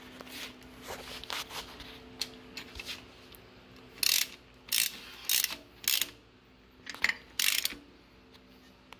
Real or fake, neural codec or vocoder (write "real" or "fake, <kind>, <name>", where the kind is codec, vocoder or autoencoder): real